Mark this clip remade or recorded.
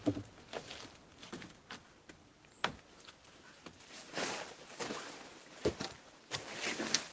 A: recorded